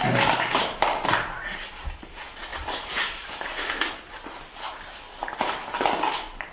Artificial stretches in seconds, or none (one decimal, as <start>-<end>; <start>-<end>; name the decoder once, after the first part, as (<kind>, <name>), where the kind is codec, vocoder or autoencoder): 0.5-1.1 (vocoder, BigVGAN v2); 2.5-3.8